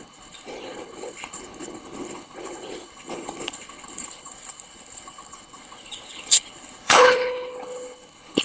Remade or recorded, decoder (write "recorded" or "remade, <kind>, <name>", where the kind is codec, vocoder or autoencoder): remade, codec, HILCodec